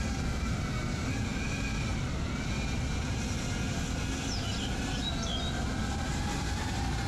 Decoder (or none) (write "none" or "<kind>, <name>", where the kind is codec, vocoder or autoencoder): none